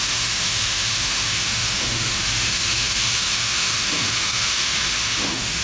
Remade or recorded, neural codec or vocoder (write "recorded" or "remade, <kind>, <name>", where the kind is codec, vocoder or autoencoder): remade, autoencoder, DAC-VAE